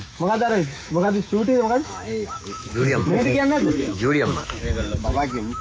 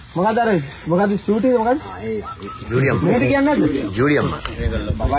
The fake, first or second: first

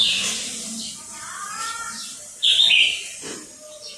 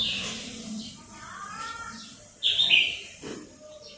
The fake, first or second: second